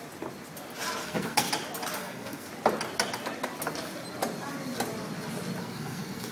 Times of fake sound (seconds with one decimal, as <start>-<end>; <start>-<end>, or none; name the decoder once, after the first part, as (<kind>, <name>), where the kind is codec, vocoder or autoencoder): 1.0-1.5 (codec, SNAC); 2.0-2.5; 5.6-6.3